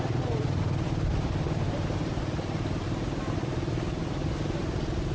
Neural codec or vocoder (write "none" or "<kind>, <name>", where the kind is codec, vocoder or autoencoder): none